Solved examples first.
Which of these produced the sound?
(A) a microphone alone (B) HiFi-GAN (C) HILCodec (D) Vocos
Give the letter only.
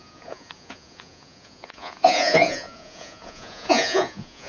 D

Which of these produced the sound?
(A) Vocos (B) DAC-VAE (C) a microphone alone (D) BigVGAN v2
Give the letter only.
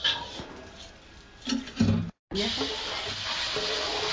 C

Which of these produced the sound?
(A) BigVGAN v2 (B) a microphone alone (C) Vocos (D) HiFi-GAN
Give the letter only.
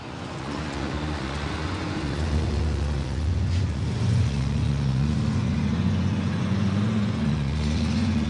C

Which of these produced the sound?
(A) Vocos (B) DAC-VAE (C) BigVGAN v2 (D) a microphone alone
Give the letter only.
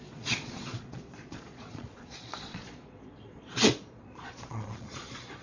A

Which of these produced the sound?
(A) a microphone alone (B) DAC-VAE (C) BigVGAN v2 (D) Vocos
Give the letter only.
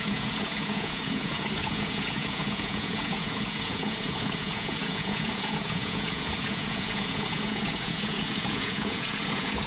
D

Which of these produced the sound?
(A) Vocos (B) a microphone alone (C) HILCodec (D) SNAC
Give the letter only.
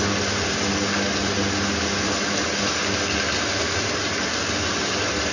B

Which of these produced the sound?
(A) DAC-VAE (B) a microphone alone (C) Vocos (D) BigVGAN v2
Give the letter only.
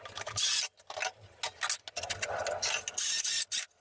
B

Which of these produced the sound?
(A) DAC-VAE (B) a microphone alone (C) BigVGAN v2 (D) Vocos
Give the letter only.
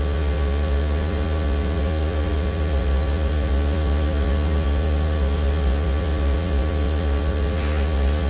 D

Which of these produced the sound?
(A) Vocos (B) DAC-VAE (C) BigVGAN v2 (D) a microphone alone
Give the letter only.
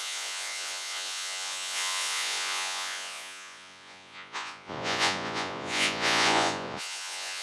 A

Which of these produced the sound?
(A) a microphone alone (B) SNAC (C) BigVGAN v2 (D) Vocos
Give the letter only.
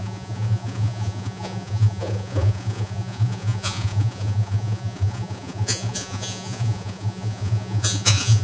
D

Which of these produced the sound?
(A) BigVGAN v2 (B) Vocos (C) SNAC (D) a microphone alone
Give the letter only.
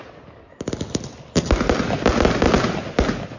D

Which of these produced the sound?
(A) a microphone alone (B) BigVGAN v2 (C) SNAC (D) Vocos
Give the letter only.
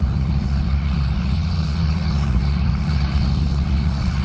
D